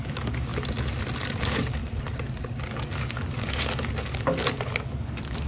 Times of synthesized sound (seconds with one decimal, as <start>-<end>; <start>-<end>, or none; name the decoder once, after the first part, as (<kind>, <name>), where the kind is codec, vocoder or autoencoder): 0.0-0.5 (codec, DAC); 1.4-1.8; 2.7-5.5